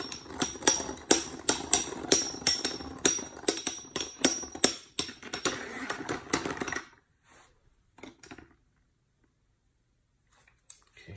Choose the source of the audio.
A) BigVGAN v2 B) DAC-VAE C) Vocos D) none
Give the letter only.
D